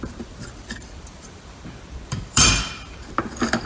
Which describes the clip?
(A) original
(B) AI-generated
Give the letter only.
B